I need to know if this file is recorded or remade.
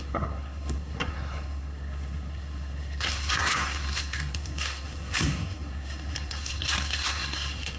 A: remade